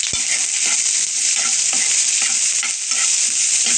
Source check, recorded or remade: recorded